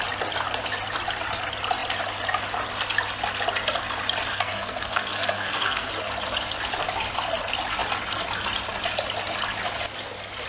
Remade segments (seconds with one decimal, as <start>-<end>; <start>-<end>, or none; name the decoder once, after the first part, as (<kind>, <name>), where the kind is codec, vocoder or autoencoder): 4.3-5.9 (codec, SNAC)

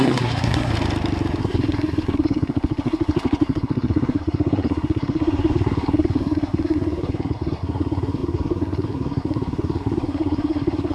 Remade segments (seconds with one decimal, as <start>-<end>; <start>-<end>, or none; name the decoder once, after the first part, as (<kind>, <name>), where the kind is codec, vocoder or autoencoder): 0.0-0.7 (codec, SNAC); 1.4-10.9

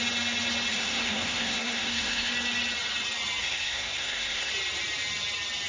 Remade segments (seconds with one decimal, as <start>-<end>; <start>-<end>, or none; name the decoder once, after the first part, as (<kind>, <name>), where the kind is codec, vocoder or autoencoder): 0.7-2.3 (codec, SNAC); 3.4-4.5

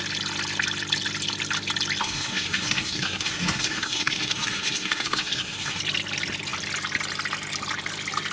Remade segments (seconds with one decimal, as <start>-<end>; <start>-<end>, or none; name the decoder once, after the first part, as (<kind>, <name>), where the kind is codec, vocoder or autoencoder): 2.0-5.8 (codec, SNAC)

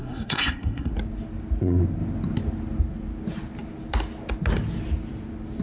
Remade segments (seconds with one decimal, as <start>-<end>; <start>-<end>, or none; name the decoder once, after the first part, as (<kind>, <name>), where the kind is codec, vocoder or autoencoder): 0.0-0.9 (codec, SNAC)

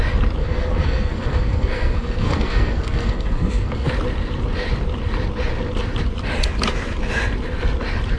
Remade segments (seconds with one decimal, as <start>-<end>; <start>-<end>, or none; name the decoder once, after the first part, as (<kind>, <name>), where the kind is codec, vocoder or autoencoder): 0.4-3.9 (codec, SNAC)

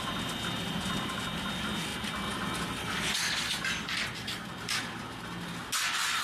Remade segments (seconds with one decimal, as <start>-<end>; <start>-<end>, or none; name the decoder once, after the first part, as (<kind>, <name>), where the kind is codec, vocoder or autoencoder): none